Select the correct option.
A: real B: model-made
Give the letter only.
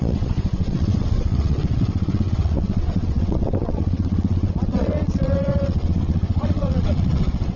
B